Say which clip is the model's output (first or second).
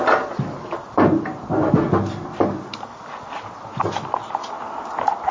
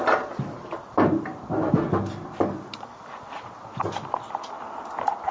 second